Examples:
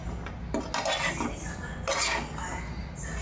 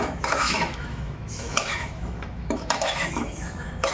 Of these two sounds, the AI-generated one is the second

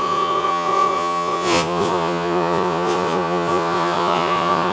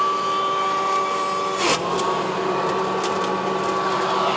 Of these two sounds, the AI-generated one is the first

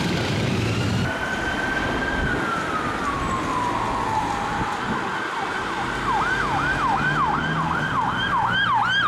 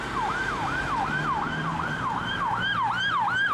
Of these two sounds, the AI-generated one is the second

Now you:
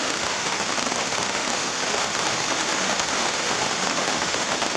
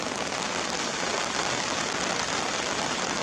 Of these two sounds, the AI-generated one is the first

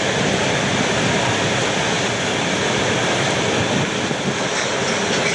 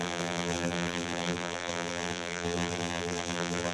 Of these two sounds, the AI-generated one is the second